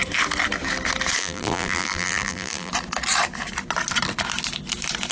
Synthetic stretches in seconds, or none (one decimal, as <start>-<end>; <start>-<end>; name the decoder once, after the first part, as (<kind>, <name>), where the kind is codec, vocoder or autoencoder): 1.2-2.7 (vocoder, BigVGAN v2)